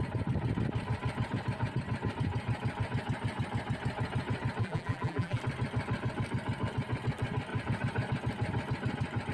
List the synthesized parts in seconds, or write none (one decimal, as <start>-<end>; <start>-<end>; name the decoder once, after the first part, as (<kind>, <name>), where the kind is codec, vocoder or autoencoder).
4.6-5.4 (vocoder, BigVGAN v2)